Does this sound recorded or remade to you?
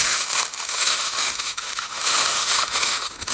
remade